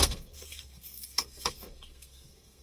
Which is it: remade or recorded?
remade